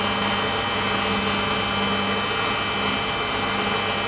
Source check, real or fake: real